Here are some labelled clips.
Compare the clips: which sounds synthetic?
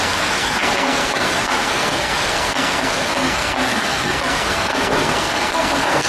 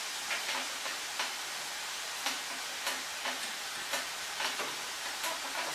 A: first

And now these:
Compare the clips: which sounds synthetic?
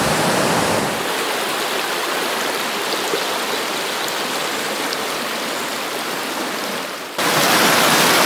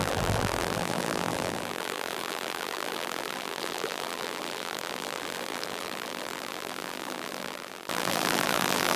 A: second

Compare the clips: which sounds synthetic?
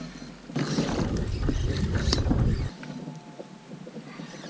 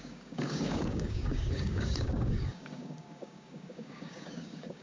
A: second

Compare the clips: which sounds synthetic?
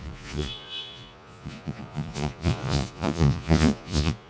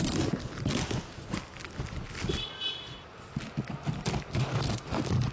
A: first